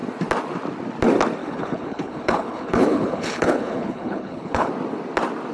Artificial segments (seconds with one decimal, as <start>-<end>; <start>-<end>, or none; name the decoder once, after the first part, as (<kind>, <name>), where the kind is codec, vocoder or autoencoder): 1.4-4.7 (codec, HILCodec)